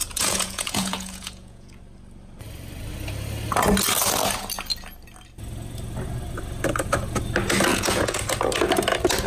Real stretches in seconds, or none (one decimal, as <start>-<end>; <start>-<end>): 1.8-7.7; 8.2-9.3